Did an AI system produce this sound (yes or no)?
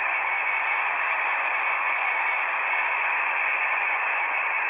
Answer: yes